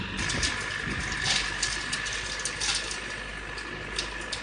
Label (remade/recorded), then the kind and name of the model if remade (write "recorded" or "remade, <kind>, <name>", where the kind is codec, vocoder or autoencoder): recorded